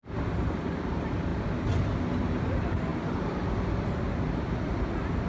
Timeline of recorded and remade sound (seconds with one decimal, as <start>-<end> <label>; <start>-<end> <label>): 0.0-5.3 recorded